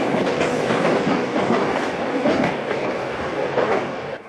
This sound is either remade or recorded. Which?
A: remade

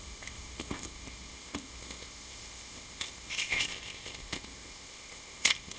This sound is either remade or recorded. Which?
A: remade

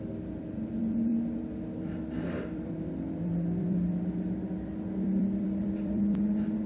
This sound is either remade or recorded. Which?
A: remade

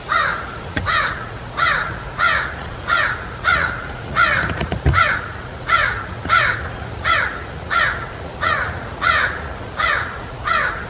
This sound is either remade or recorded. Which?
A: remade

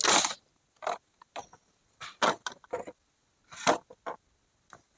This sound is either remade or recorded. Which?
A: recorded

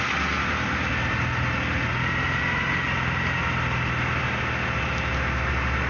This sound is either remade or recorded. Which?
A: recorded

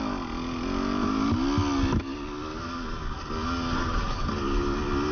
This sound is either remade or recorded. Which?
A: recorded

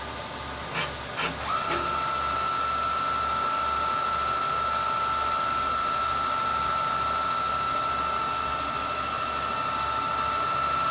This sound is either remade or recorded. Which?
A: recorded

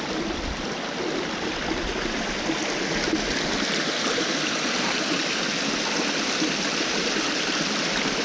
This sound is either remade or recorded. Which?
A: recorded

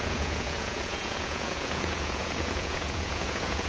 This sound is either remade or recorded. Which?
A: remade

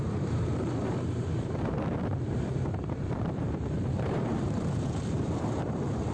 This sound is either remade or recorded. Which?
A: remade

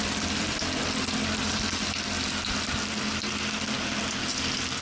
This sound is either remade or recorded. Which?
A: recorded